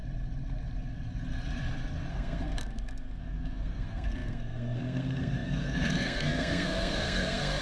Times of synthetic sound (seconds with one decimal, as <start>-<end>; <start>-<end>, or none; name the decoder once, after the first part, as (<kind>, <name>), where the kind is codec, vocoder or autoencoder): 2.1-7.6 (codec, SNAC)